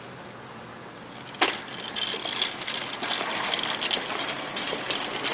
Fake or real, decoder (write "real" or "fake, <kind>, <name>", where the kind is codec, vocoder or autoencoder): real